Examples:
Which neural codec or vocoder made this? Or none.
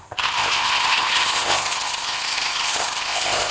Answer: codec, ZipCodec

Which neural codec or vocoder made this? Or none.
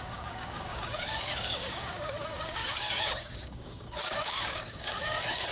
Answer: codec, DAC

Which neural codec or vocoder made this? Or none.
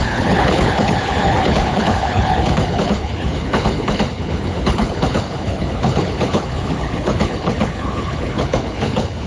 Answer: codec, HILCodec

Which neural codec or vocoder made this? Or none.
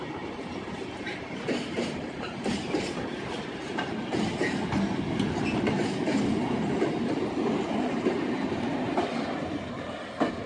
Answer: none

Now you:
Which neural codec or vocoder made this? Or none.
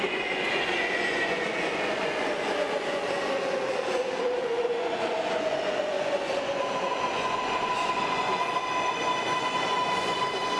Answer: vocoder, Vocos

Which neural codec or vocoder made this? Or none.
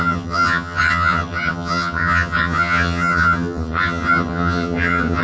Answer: vocoder, HiFi-GAN